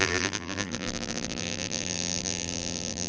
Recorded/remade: remade